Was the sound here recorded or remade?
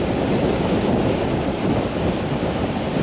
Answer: recorded